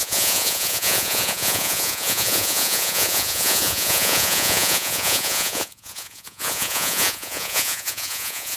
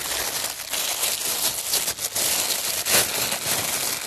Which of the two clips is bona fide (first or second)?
second